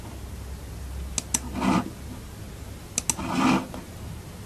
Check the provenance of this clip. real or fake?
real